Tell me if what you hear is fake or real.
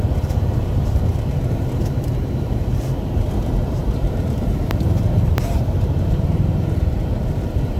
fake